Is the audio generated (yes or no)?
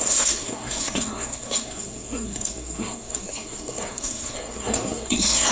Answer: yes